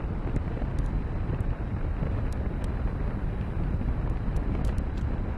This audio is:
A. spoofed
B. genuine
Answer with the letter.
B